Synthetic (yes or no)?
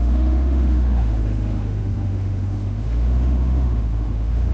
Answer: yes